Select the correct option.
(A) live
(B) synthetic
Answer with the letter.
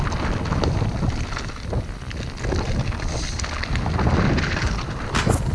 A